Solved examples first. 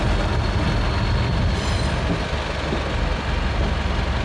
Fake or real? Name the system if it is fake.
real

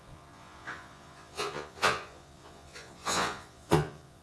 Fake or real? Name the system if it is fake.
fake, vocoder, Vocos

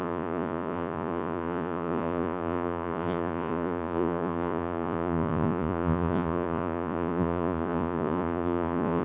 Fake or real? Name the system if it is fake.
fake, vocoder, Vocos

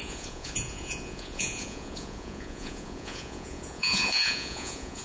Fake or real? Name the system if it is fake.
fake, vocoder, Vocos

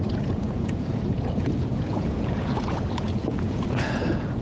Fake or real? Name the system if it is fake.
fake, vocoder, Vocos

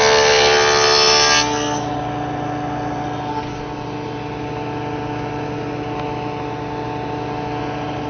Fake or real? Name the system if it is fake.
real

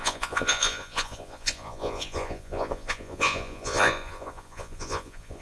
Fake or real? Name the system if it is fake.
fake, vocoder, Vocos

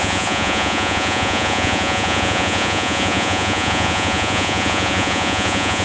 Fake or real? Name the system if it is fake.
fake, vocoder, Vocos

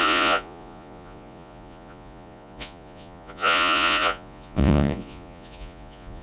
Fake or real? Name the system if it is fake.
fake, vocoder, Vocos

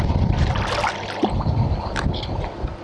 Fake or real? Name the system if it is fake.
real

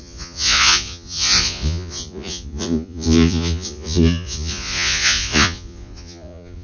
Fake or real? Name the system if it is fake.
fake, vocoder, Vocos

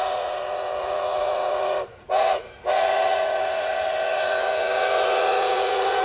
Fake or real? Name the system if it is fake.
fake, vocoder, Vocos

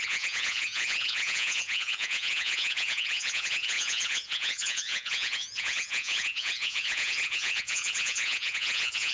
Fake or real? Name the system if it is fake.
fake, vocoder, Vocos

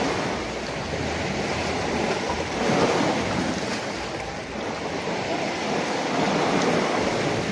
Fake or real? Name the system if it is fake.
real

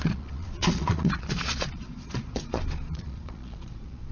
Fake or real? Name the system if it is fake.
fake, vocoder, Vocos